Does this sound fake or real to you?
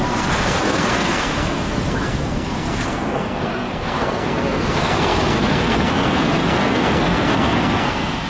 fake